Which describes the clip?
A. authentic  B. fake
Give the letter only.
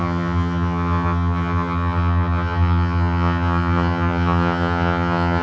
B